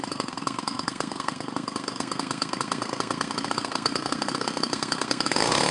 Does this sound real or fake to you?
fake